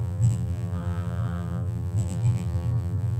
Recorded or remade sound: remade